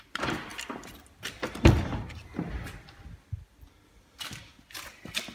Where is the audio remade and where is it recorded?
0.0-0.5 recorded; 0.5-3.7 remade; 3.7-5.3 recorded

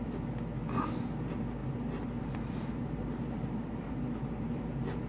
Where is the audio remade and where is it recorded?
0.0-1.6 recorded; 1.6-5.1 remade

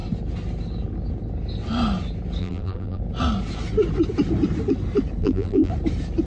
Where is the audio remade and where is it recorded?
0.0-2.4 recorded; 2.4-3.0 remade; 3.0-5.2 recorded; 5.2-5.7 remade; 5.7-6.3 recorded

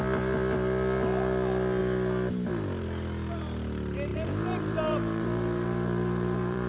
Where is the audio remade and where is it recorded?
0.0-4.1 recorded; 4.1-6.7 remade

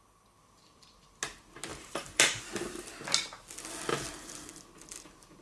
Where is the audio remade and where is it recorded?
0.0-1.7 recorded; 1.7-2.4 remade; 2.4-5.4 recorded